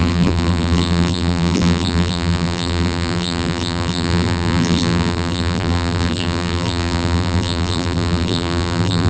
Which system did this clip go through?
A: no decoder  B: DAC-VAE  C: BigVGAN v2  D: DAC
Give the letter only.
C